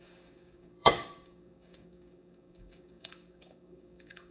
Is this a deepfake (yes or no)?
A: yes